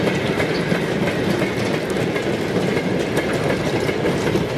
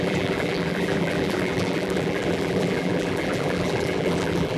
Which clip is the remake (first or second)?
second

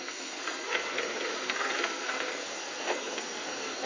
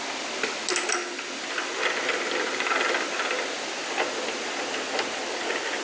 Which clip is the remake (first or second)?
first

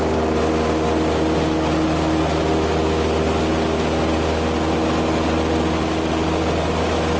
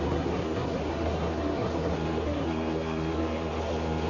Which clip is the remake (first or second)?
second